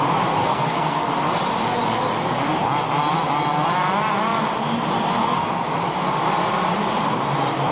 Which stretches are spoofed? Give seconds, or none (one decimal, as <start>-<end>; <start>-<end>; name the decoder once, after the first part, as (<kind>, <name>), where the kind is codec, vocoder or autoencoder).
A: 0.4-1.1 (codec, SNAC)